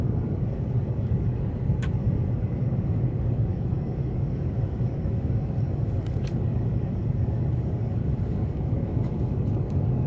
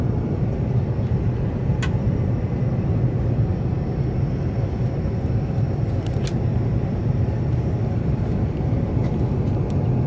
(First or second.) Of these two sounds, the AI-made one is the first